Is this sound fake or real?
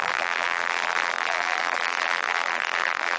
fake